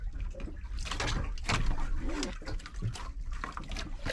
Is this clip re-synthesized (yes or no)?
no